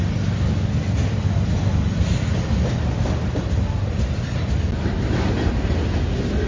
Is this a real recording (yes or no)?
yes